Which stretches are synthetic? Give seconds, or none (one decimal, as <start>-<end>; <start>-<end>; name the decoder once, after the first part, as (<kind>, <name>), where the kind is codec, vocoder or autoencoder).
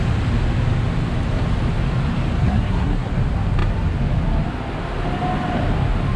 2.4-3.1 (codec, SNAC)